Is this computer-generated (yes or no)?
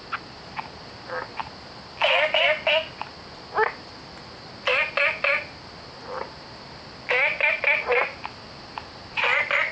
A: no